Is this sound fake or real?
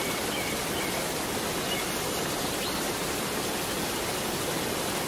real